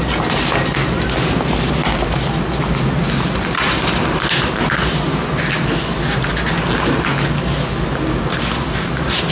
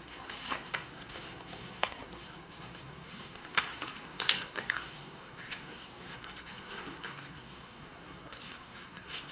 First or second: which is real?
first